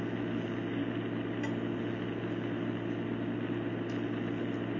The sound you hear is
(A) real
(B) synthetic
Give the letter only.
A